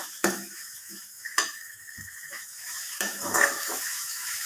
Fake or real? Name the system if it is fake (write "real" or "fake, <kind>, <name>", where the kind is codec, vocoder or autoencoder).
fake, autoencoder, DAC-VAE